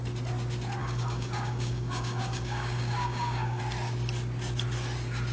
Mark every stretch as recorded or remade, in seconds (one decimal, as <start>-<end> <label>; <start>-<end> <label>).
0.0-0.8 recorded; 0.8-3.6 remade; 3.6-5.3 recorded